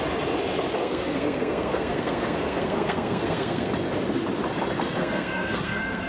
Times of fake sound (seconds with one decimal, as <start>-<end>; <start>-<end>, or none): 0.8-3.7; 5.0-6.1